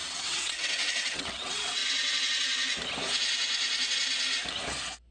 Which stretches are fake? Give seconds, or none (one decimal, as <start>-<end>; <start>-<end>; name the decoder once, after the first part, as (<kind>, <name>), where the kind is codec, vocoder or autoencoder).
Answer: 0.0-1.8 (vocoder, WaveNeXt)